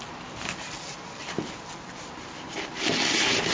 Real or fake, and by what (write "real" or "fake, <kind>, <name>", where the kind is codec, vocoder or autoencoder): fake, vocoder, BigVGAN v2